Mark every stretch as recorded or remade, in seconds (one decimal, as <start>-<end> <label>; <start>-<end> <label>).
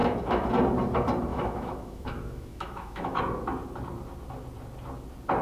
0.0-0.5 remade; 0.5-1.3 recorded; 1.3-3.2 remade; 3.2-5.4 recorded